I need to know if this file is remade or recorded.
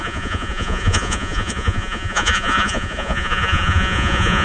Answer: remade